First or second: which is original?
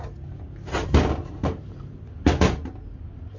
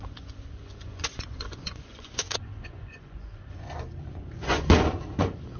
first